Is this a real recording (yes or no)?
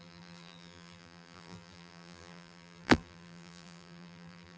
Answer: no